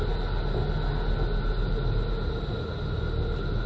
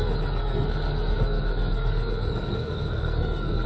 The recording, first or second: first